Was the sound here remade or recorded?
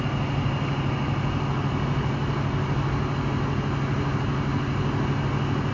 recorded